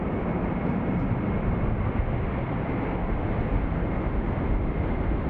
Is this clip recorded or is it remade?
recorded